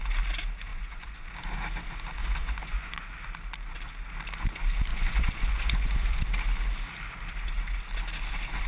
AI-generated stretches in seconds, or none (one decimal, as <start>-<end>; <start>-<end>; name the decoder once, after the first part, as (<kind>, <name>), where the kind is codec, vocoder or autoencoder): 0.7-1.3 (vocoder, Vocos); 2.2-3.1; 4.9-6.2